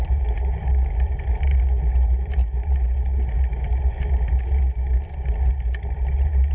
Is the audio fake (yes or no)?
yes